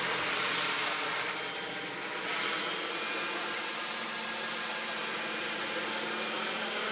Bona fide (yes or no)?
yes